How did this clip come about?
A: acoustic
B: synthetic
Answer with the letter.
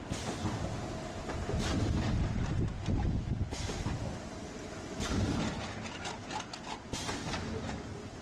A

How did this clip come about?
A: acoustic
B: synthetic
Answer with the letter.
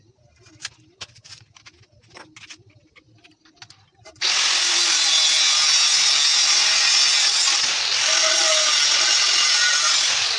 A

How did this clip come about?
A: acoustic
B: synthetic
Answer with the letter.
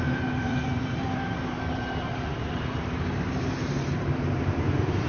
B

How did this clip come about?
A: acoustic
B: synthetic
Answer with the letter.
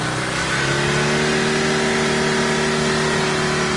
A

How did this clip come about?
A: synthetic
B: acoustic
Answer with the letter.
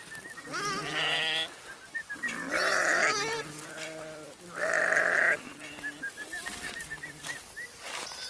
A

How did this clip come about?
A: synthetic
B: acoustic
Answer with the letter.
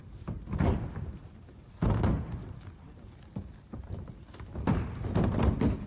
B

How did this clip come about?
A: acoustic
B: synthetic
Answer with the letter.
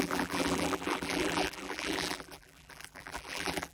B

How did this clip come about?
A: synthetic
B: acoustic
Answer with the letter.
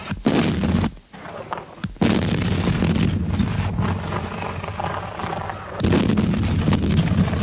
B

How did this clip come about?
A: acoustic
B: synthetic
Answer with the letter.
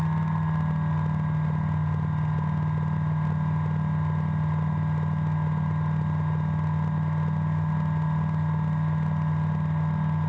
A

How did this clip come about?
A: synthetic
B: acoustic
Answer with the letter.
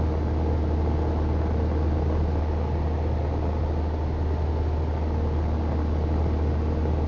B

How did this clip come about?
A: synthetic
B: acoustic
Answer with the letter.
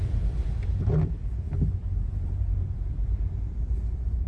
A